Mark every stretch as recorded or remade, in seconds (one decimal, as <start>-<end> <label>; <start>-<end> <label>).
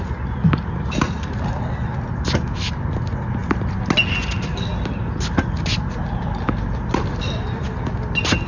0.0-8.5 recorded